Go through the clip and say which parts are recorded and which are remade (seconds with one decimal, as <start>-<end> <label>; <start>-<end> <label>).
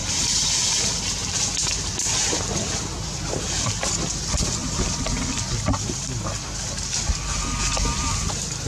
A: 0.0-0.7 remade; 0.7-1.2 recorded; 1.2-1.9 remade; 1.9-4.6 recorded; 4.6-7.2 remade; 7.2-8.7 recorded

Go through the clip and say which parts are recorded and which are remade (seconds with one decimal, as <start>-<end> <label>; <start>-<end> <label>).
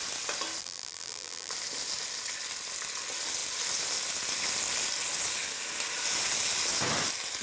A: 0.0-0.6 recorded; 0.6-1.5 remade; 1.5-7.4 recorded